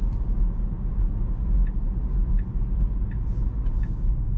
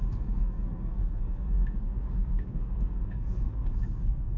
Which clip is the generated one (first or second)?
second